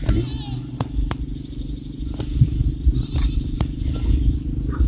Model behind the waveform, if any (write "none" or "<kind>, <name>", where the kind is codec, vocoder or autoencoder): none